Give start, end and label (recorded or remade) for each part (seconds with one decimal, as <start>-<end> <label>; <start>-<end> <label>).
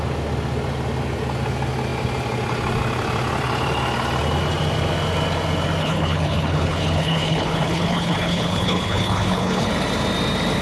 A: 0.0-5.8 recorded; 5.8-9.7 remade; 9.7-10.6 recorded